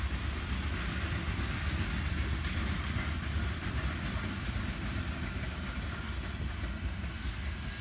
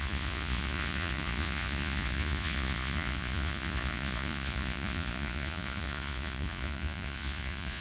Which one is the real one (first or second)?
first